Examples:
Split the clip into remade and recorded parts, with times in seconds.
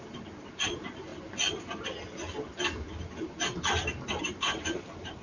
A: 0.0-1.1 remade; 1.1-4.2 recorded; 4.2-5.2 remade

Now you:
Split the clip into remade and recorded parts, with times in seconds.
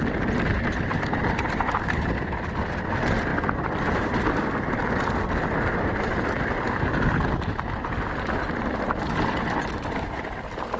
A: 0.0-10.8 recorded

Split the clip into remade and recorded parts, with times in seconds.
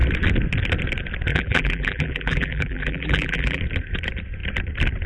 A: 0.0-1.3 recorded; 1.3-3.6 remade; 3.6-5.1 recorded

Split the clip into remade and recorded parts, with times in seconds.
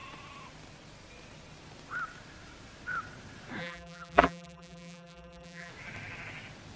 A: 0.0-3.6 recorded; 3.6-5.7 remade; 5.7-6.8 recorded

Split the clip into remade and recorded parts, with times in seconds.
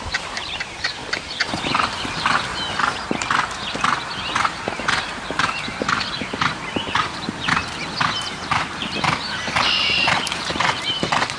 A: 0.0-1.0 remade; 1.0-1.5 recorded; 1.5-2.5 remade; 2.5-4.3 recorded; 4.3-7.6 remade; 7.6-8.2 recorded; 8.2-11.4 remade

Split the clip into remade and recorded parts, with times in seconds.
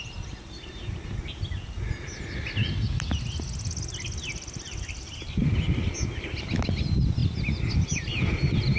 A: 0.0-2.6 recorded; 2.6-3.3 remade; 3.3-4.3 recorded; 4.3-4.8 remade; 4.8-7.2 recorded; 7.2-8.3 remade; 8.3-8.8 recorded